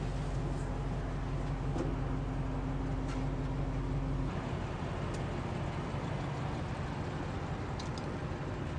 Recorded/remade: recorded